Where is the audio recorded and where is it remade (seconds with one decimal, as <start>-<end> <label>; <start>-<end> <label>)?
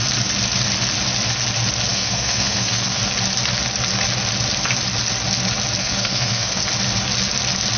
0.0-1.9 recorded; 1.9-3.0 remade; 3.0-5.8 recorded; 5.8-6.6 remade; 6.6-7.8 recorded